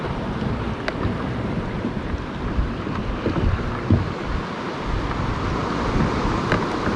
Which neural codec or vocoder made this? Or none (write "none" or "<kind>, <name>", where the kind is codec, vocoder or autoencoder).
none